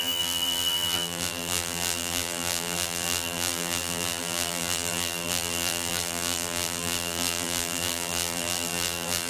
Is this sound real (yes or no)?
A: no